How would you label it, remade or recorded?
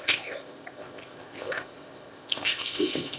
remade